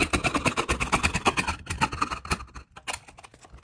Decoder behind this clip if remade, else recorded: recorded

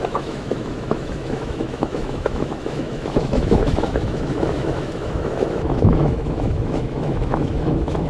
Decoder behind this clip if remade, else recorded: remade, autoencoder, DAC-VAE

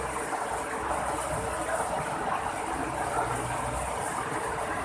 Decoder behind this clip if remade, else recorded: recorded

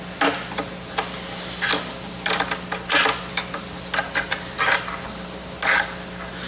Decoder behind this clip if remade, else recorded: recorded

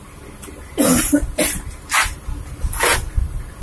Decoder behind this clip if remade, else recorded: recorded